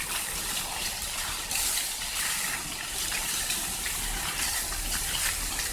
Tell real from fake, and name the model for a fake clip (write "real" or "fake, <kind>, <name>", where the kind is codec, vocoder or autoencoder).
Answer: fake, vocoder, BigVGAN v2